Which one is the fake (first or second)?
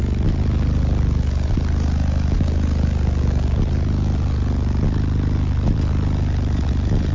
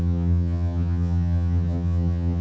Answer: second